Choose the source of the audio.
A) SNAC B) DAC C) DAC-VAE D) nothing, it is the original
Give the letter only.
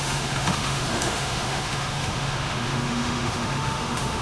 C